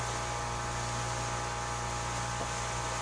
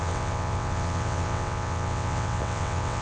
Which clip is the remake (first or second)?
second